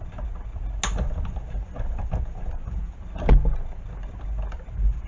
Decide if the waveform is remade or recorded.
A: recorded